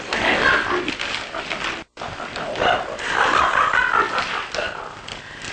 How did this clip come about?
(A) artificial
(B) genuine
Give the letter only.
B